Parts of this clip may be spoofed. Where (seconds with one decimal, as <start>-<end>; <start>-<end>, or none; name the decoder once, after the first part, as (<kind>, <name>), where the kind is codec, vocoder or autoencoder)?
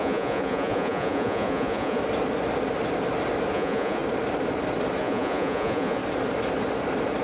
0.0-2.0 (vocoder, Vocos); 3.5-4.0; 5.0-6.0